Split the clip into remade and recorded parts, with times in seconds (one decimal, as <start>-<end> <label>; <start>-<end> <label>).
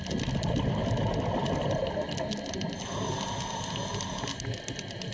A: 0.0-5.1 recorded